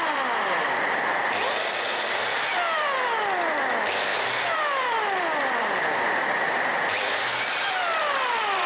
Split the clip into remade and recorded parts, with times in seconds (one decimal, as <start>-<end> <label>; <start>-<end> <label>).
0.0-8.7 remade